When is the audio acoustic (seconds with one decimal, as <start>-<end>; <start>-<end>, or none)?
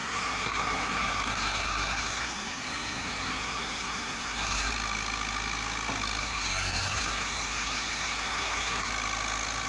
4.7-6.2; 8.9-9.7